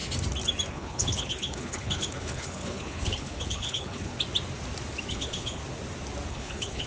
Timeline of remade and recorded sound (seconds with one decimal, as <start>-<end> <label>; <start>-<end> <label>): 0.0-0.7 recorded; 0.7-4.1 remade; 4.1-5.1 recorded; 5.1-5.6 remade; 5.6-6.3 recorded; 6.3-6.9 remade